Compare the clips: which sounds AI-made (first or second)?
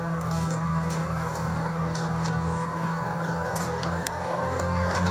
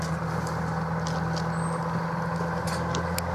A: first